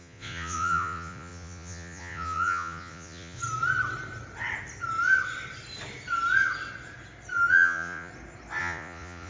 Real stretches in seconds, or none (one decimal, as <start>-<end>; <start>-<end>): 3.4-7.5; 8.1-8.6